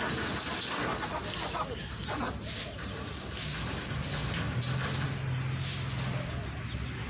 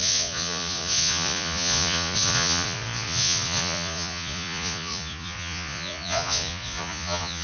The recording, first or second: first